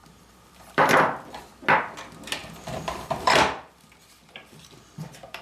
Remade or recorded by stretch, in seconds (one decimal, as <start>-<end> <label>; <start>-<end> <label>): 0.0-1.4 remade; 1.4-2.4 recorded; 2.4-5.4 remade